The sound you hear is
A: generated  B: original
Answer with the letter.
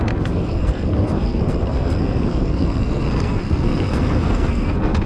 A